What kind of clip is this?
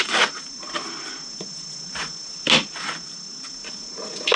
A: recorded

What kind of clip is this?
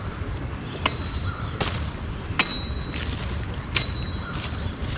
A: recorded